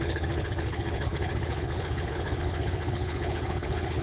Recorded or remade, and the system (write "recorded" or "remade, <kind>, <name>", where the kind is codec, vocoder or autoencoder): remade, codec, HILCodec